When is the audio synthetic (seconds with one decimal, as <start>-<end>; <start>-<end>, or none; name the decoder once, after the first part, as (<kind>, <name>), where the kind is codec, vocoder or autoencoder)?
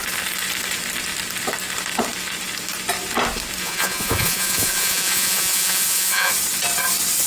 3.6-6.3 (vocoder, Vocos)